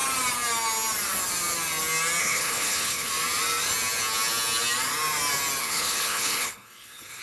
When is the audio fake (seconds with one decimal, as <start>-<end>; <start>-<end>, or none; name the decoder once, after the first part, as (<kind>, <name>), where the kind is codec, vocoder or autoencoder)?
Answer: 2.2-3.1 (codec, HILCodec); 5.6-7.2

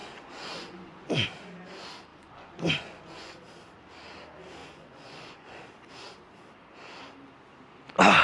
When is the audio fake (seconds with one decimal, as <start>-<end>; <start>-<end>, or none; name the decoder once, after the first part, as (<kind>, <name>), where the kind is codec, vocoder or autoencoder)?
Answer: 0.0-1.1 (vocoder, Vocos); 2.1-3.4; 4.6-5.6

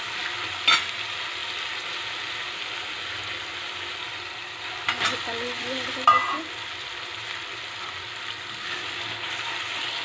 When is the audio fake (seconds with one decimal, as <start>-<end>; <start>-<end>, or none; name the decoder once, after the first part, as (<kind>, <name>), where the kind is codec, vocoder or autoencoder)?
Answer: none

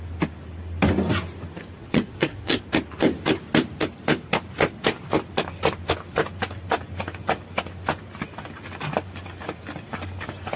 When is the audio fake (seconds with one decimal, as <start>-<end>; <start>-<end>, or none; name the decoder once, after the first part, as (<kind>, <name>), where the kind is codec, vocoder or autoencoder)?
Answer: 1.8-2.6 (vocoder, Vocos)